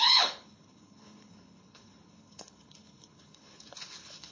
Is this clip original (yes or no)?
no